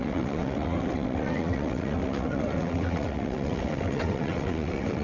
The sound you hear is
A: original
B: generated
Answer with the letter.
B